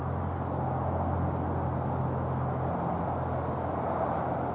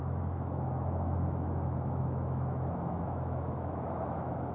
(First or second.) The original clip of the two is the first